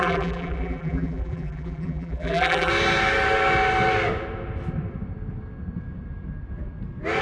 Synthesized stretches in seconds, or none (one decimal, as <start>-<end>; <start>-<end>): 0.0-2.7